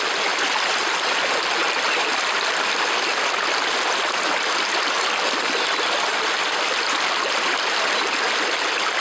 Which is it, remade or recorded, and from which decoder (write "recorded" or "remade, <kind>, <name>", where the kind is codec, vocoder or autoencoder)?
recorded